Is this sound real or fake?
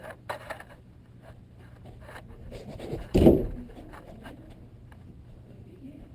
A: fake